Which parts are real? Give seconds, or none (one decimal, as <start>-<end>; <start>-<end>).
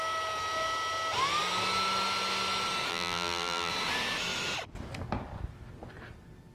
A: 0.0-2.9; 3.7-6.5